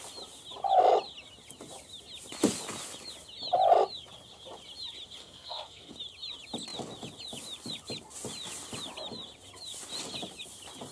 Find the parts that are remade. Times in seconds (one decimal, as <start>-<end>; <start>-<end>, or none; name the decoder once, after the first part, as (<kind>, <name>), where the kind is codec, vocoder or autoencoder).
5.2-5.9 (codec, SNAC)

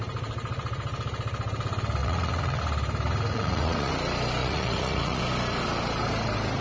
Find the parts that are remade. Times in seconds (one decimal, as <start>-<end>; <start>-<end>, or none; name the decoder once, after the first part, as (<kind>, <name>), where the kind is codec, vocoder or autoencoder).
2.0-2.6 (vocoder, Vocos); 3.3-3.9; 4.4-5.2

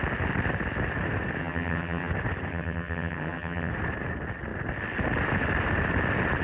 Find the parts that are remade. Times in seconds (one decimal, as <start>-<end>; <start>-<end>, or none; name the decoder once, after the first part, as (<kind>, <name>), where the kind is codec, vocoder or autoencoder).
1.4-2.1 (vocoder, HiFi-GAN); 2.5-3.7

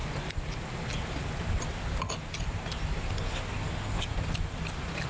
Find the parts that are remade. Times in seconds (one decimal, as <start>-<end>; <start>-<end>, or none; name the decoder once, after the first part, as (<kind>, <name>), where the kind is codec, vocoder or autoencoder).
none